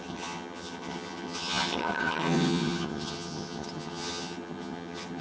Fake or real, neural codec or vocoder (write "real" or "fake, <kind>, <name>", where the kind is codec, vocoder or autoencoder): fake, vocoder, HiFi-GAN